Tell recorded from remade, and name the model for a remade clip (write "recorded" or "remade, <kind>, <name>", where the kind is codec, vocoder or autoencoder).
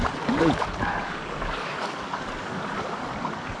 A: remade, codec, DAC